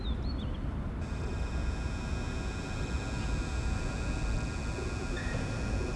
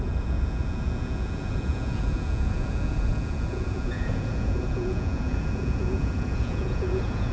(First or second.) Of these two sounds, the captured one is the first